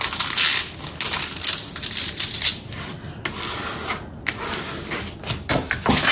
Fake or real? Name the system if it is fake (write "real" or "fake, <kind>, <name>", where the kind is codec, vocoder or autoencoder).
real